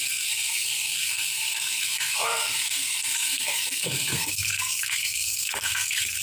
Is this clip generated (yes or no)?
yes